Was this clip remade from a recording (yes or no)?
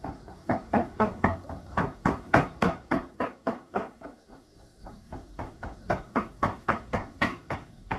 yes